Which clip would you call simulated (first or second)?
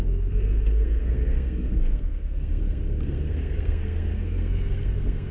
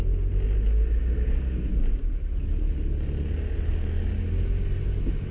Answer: first